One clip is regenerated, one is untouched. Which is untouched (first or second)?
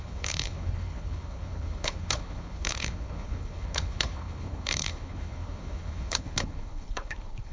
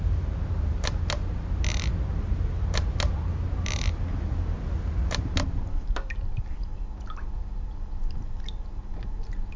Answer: second